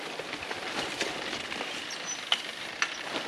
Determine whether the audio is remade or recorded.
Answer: recorded